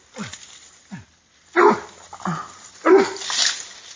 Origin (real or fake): real